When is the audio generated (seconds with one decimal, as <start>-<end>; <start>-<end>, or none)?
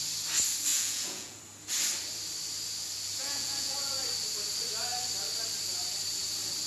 0.7-1.4; 3.2-3.9